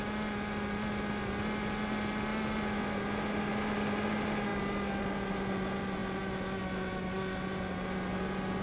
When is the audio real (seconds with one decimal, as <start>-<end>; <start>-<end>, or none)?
0.0-8.6